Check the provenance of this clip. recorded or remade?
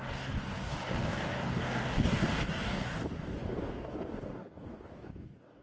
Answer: remade